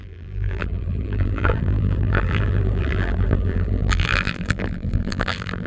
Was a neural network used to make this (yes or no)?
yes